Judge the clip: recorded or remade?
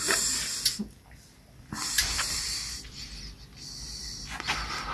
recorded